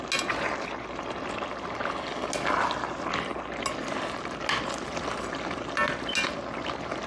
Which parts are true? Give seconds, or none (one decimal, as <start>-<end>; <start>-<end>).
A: 0.0-7.1